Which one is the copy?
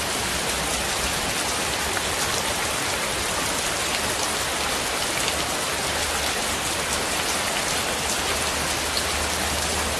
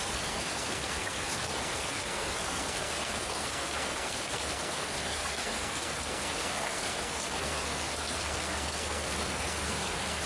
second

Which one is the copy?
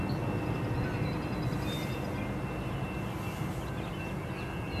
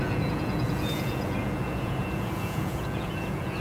second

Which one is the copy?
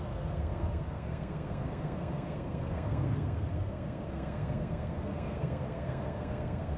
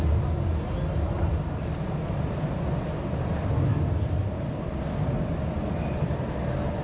first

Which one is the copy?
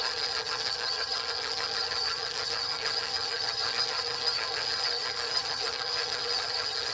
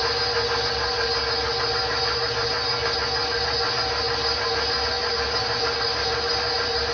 first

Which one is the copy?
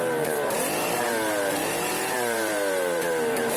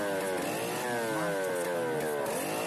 first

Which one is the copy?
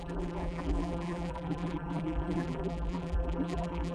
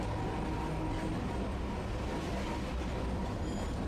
first